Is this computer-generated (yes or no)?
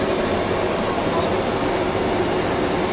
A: no